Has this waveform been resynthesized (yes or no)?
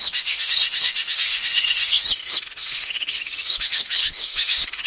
yes